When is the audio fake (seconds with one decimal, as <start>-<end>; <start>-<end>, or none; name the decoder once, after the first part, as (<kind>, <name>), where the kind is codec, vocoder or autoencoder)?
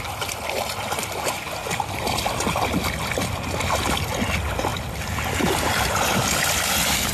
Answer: none